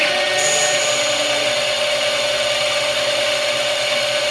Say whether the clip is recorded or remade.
recorded